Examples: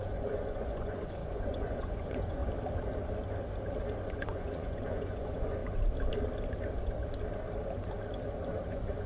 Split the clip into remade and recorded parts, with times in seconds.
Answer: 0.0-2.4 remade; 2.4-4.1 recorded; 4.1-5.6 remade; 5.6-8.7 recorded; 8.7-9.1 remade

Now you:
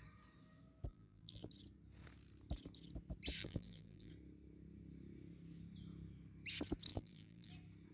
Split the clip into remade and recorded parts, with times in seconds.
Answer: 0.0-0.9 recorded; 0.9-1.5 remade; 1.5-3.4 recorded; 3.4-4.1 remade; 4.1-6.9 recorded; 6.9-7.5 remade; 7.5-7.9 recorded

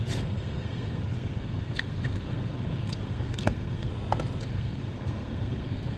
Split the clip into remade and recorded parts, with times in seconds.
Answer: 0.0-3.9 remade; 3.9-4.4 recorded; 4.4-6.0 remade

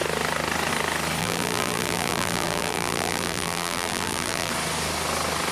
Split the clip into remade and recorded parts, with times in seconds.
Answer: 0.0-1.2 recorded; 1.2-4.5 remade; 4.5-5.5 recorded

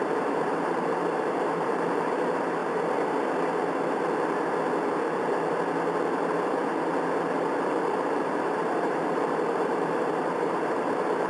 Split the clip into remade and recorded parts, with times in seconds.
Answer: 0.0-2.6 remade; 2.6-6.1 recorded; 6.1-6.6 remade; 6.6-7.7 recorded; 7.7-11.3 remade

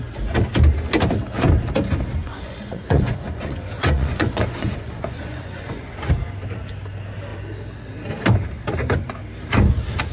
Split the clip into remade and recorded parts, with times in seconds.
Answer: 0.0-2.2 recorded; 2.2-6.1 remade; 6.1-10.1 recorded